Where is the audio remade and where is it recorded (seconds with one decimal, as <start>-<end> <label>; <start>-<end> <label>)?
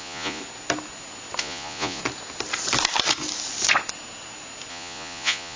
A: 0.0-0.4 remade; 0.4-1.4 recorded; 1.4-2.0 remade; 2.0-4.7 recorded; 4.7-5.6 remade